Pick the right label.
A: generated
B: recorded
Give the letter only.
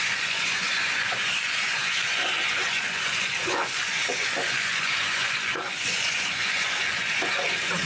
A